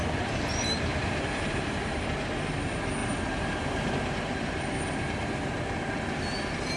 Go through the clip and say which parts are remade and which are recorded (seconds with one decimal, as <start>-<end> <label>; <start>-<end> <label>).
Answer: 0.0-0.9 recorded; 0.9-2.0 remade; 2.0-3.0 recorded; 3.0-5.5 remade; 5.5-6.8 recorded